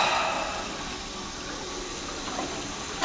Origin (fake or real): real